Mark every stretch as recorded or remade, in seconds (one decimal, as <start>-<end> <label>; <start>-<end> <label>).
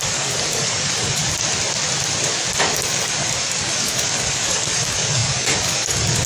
0.0-1.2 remade; 1.2-2.6 recorded; 2.6-6.3 remade